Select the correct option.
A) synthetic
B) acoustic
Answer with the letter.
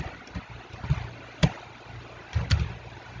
B